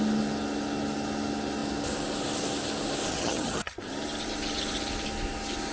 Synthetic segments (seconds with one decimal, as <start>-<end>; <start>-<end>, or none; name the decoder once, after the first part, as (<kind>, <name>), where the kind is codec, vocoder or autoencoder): 3.1-3.8 (vocoder, HiFi-GAN)

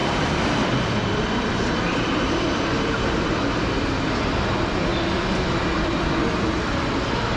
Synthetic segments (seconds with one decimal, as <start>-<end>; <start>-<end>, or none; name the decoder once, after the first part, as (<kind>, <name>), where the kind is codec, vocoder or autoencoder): 0.0-4.9 (vocoder, BigVGAN v2); 5.7-7.4

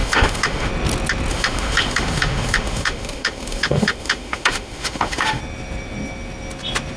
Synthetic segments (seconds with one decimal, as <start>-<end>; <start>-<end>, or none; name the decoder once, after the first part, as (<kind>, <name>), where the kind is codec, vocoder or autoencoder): 0.0-0.7 (autoencoder, DAC-VAE); 1.3-5.4

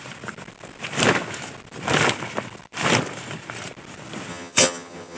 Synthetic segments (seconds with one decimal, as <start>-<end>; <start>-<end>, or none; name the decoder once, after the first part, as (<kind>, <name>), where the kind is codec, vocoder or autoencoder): 4.3-5.2 (vocoder, HiFi-GAN)

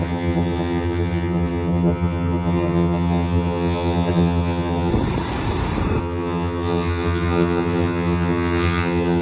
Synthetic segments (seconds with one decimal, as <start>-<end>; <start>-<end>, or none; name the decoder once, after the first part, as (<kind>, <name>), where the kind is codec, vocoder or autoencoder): 0.0-4.9 (vocoder, HiFi-GAN); 6.0-9.2

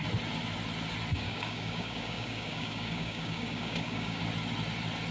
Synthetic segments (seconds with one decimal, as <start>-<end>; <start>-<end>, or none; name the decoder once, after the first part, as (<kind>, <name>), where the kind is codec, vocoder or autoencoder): 1.1-4.2 (codec, DAC)

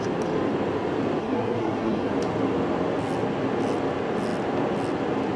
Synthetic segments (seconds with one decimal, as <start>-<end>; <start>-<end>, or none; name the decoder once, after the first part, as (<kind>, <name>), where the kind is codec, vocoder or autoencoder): 1.2-2.1 (codec, SNAC)